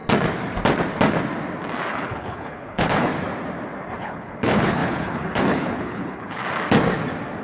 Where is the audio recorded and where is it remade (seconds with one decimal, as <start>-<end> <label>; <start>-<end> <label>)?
0.0-1.9 recorded; 1.9-3.1 remade; 3.1-4.0 recorded; 4.0-6.4 remade; 6.4-7.4 recorded